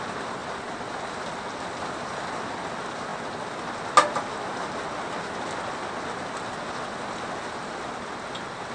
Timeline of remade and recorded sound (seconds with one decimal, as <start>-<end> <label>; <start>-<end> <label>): 0.0-8.7 recorded